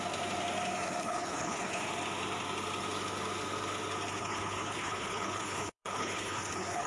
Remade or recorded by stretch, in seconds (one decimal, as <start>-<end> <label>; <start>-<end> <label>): 0.0-1.0 recorded; 1.0-1.8 remade; 1.8-4.2 recorded; 4.2-6.9 remade